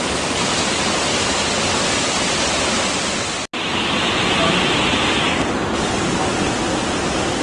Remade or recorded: recorded